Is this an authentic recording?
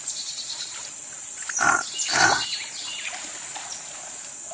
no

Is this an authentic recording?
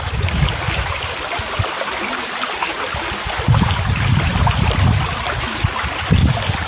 yes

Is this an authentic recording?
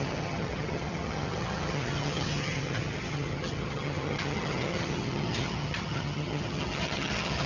no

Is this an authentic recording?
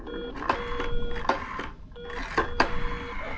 yes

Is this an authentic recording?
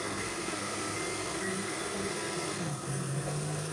no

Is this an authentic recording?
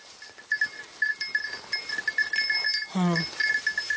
yes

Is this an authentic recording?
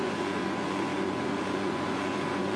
no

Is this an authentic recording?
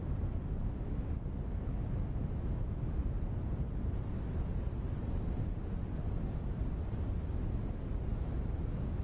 yes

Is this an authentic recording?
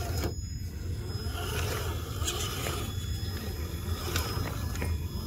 yes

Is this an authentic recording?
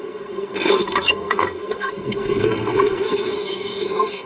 no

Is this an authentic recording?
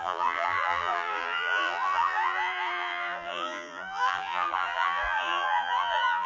no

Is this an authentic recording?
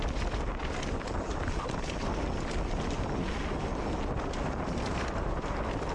yes